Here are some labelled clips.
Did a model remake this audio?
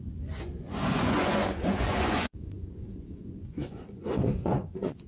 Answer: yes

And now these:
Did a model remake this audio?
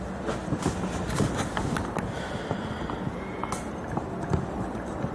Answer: no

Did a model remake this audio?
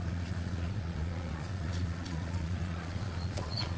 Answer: yes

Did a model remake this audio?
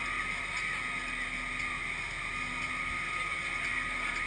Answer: no